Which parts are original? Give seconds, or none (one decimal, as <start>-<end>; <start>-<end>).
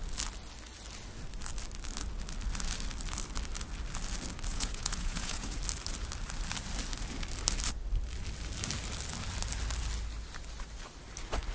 0.0-4.5; 5.6-11.5